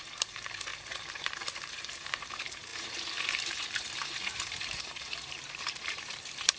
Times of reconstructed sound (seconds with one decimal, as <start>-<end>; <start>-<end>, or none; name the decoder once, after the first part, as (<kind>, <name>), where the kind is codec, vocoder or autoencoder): 0.0-6.6 (vocoder, BigVGAN v2)